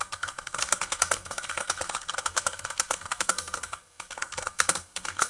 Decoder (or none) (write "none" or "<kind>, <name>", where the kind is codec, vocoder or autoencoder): codec, SNAC